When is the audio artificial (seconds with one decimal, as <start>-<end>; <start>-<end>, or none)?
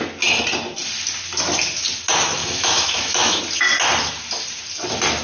2.4-3.4